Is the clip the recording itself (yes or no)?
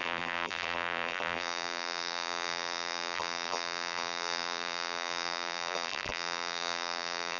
no